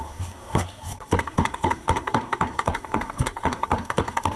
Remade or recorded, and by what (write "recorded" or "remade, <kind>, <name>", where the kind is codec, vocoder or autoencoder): remade, codec, SNAC